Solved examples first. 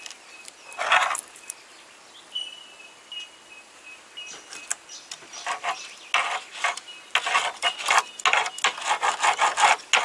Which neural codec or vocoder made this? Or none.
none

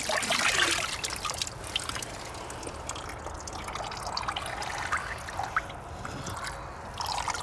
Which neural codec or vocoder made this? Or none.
none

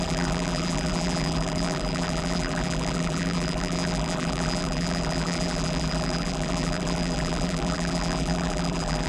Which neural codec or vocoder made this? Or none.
vocoder, BigVGAN v2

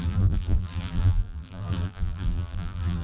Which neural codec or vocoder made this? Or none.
vocoder, BigVGAN v2